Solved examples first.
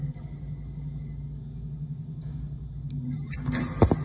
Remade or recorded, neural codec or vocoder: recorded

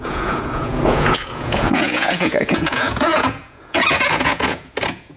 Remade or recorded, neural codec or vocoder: remade, vocoder, Vocos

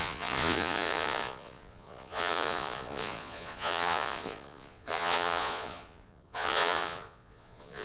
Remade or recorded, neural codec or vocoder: remade, vocoder, Vocos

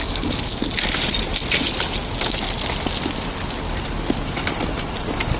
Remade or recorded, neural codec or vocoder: recorded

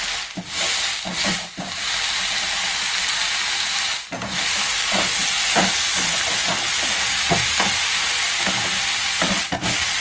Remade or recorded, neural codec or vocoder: recorded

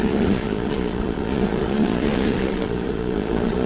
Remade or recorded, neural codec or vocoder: remade, vocoder, Vocos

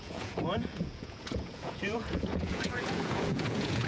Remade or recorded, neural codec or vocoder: remade, vocoder, Vocos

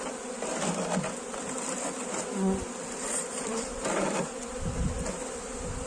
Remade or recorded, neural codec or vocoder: recorded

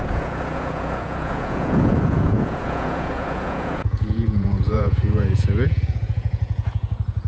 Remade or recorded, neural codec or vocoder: remade, vocoder, Vocos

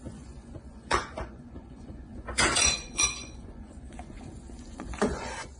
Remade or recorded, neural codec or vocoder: remade, vocoder, Vocos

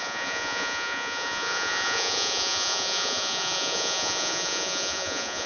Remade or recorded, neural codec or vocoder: remade, vocoder, Vocos